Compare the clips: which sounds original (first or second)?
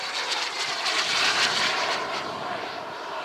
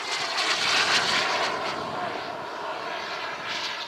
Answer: second